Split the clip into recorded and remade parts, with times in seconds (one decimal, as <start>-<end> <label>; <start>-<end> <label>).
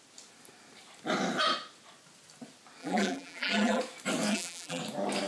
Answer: 0.0-2.8 recorded; 2.8-3.8 remade; 3.8-4.3 recorded; 4.3-4.8 remade; 4.8-5.3 recorded